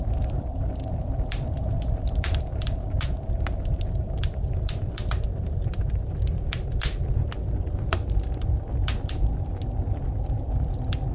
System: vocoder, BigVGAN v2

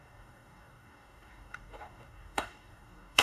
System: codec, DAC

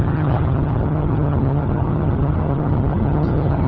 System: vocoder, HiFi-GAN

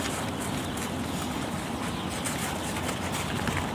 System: none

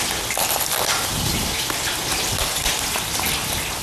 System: none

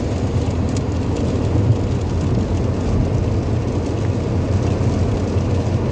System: none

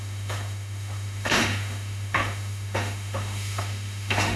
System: autoencoder, DAC-VAE